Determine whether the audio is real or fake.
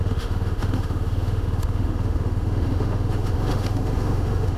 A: fake